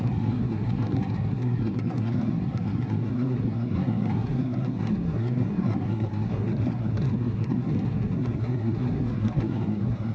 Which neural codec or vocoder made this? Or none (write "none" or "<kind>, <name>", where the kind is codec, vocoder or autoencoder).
codec, SNAC